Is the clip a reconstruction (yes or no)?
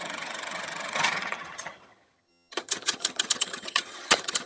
yes